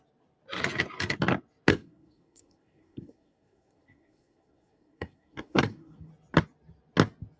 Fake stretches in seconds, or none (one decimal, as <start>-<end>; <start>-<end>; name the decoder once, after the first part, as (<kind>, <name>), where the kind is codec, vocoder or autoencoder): 1.7-6.1 (codec, SNAC)